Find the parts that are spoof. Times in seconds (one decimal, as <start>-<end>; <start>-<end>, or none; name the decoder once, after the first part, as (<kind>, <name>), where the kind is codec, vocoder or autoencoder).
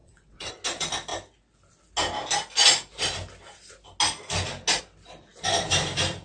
0.0-0.5 (vocoder, WaveNeXt)